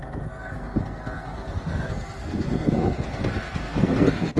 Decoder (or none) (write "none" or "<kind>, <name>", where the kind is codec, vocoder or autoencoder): codec, SNAC